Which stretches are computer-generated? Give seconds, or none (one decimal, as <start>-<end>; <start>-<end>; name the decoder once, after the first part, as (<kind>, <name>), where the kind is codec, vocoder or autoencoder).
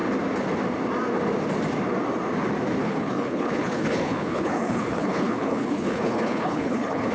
2.8-7.1 (codec, HILCodec)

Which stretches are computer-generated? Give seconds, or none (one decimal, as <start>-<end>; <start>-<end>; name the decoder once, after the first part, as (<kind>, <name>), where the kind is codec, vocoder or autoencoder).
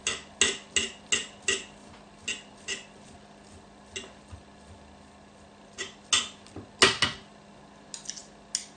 none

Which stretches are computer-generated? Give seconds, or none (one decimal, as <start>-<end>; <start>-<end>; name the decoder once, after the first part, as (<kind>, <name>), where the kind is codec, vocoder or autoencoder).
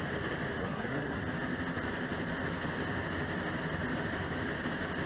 0.6-1.2 (codec, SNAC)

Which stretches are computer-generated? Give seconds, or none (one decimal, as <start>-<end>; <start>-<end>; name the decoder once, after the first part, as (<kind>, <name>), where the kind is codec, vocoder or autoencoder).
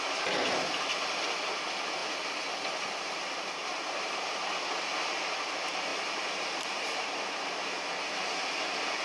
3.6-4.3 (vocoder, BigVGAN v2); 5.9-8.3